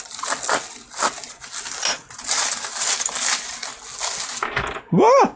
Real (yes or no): yes